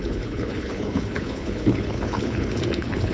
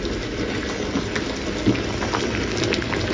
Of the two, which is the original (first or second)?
second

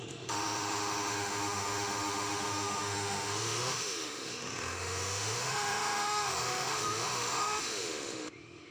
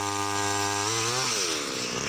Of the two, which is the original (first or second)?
second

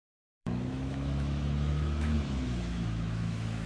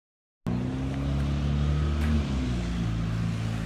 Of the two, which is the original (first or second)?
second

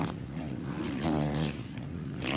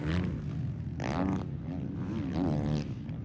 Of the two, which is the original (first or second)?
second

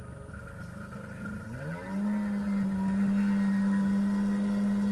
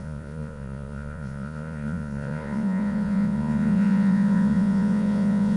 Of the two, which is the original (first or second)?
first